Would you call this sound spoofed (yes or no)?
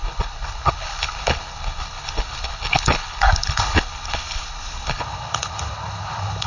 yes